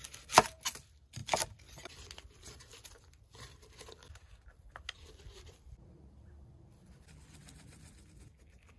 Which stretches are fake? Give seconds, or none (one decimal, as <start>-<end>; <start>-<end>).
none